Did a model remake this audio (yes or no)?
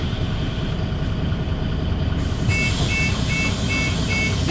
no